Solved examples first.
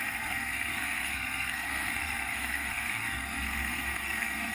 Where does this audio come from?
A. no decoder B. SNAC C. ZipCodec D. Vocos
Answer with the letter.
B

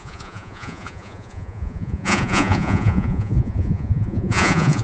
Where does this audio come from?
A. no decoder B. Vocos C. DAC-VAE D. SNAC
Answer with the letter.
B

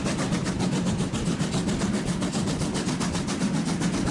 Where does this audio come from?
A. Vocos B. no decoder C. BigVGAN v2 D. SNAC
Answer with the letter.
B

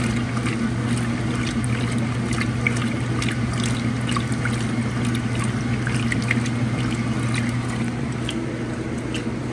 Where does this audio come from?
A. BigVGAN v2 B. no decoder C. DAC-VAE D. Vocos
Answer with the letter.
B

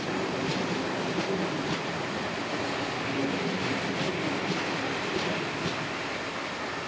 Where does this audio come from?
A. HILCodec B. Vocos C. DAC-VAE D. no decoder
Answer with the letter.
D